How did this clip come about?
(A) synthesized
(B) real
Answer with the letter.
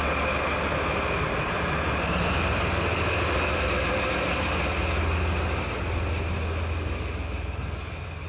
B